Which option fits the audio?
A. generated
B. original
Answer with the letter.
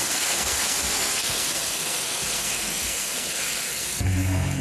A